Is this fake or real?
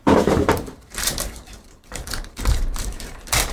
fake